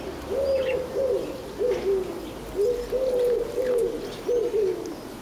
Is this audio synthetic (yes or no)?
no